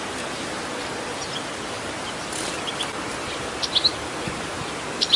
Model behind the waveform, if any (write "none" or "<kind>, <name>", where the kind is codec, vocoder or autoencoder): none